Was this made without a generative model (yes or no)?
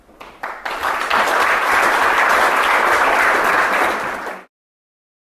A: yes